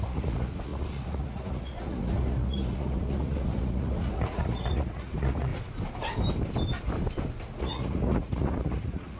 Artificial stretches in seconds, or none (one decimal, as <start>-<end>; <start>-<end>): 0.0-5.5; 7.6-9.2